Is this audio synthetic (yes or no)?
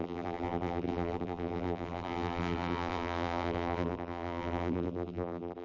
yes